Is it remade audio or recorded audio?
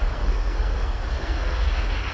remade